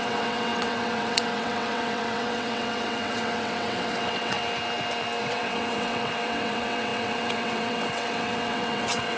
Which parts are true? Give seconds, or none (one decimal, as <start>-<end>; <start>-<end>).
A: 4.4-5.2